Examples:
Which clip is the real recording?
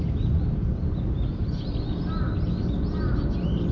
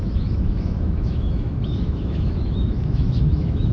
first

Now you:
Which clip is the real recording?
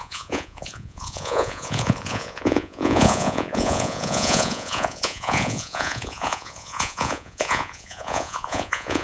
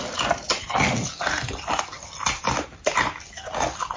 second